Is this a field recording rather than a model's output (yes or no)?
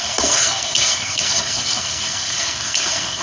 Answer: no